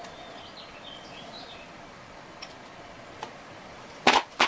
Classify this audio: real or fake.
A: fake